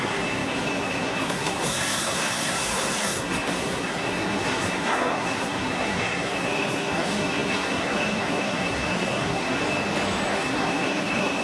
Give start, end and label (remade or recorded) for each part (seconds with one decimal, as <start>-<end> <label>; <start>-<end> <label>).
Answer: 0.0-9.6 remade; 9.6-10.3 recorded; 10.3-11.4 remade